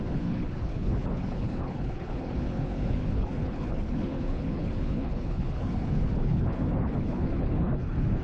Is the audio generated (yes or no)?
yes